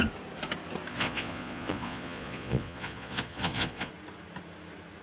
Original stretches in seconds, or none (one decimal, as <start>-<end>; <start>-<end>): 0.0-0.9; 3.9-5.0